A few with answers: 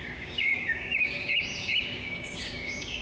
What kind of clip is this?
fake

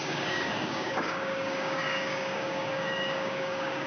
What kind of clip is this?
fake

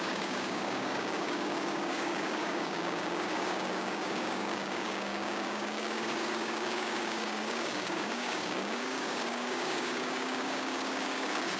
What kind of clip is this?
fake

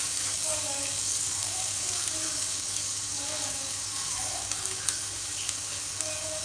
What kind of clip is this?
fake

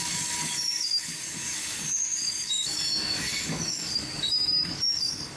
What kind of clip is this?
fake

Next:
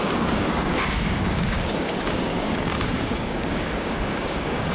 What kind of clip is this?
fake